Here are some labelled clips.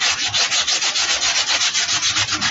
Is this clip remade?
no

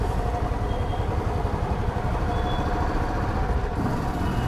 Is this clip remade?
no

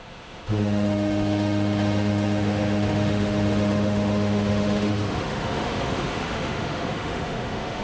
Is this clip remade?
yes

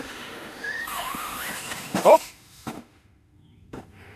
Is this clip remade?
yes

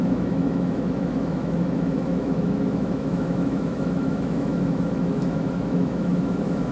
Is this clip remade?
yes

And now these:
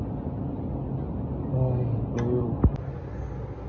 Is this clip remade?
no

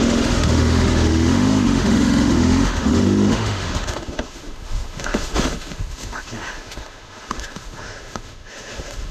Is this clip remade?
yes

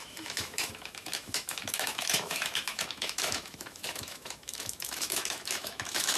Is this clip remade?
yes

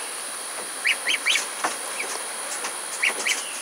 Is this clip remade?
no